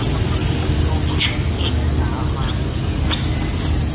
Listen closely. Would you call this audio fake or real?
real